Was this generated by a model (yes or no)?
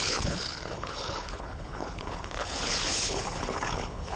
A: yes